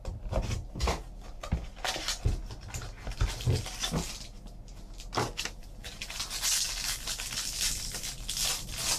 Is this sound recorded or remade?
recorded